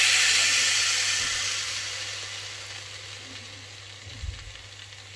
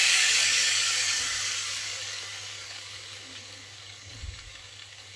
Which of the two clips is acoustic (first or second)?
first